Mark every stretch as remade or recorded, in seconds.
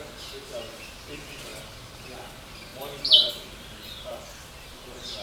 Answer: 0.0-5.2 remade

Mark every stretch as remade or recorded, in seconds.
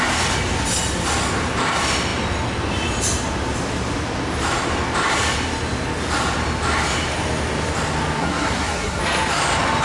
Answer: 0.0-8.2 recorded; 8.2-9.0 remade; 9.0-9.8 recorded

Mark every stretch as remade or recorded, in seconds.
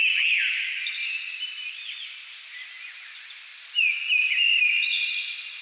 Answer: 0.0-1.3 recorded; 1.3-2.6 remade; 2.6-4.2 recorded; 4.2-5.6 remade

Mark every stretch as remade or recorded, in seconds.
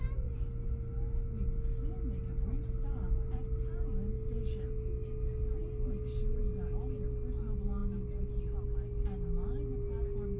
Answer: 0.0-10.4 recorded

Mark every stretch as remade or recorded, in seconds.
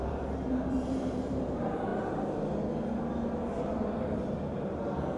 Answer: 0.0-1.9 remade; 1.9-5.2 recorded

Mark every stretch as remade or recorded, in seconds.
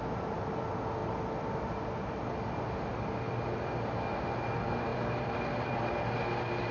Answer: 0.0-4.9 recorded; 4.9-5.7 remade; 5.7-6.7 recorded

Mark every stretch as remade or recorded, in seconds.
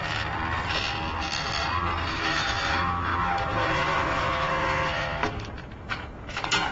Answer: 0.0-2.1 recorded; 2.1-6.7 remade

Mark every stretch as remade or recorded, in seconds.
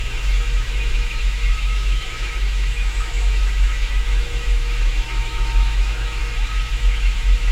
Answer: 0.0-6.2 remade; 6.2-6.7 recorded; 6.7-7.5 remade